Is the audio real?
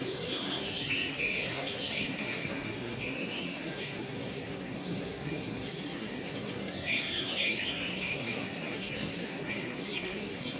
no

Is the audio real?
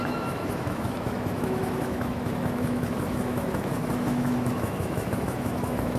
no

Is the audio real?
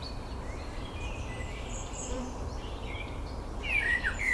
no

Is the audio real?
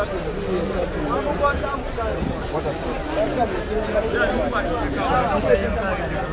yes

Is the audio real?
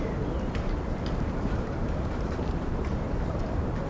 no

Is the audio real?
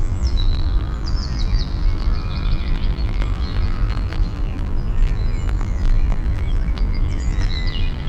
no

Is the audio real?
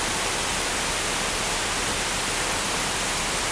yes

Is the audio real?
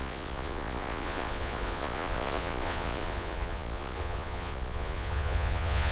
no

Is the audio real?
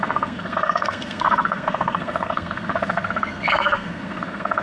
no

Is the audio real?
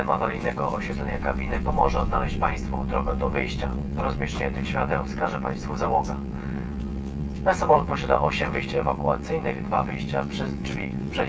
no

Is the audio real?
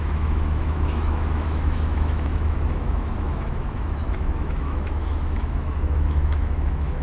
no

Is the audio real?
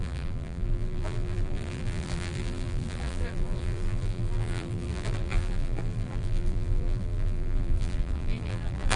no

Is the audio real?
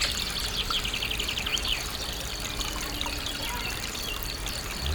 yes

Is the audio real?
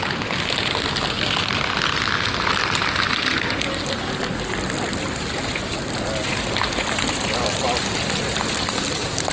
yes